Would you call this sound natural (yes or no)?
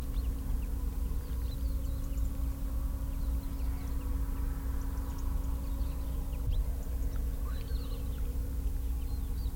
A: yes